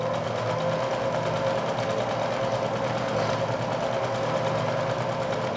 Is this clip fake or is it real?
real